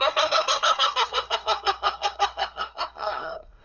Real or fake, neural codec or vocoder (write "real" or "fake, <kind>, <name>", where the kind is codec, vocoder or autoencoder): fake, codec, SNAC